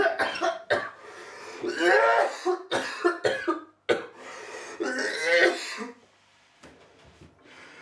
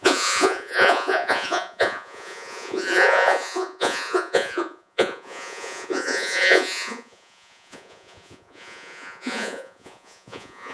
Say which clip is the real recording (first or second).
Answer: first